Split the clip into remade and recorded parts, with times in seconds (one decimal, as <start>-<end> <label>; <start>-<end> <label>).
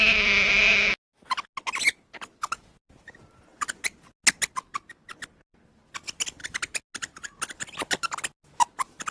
0.0-9.1 recorded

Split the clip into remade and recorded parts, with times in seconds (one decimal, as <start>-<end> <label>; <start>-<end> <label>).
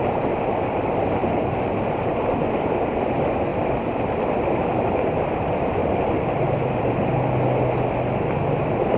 0.0-1.2 recorded; 1.2-2.2 remade; 2.2-5.8 recorded; 5.8-6.9 remade; 6.9-9.0 recorded